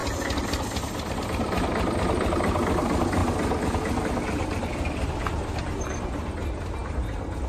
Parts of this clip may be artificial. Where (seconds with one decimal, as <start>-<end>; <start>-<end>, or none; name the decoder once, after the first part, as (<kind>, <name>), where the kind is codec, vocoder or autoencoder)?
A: none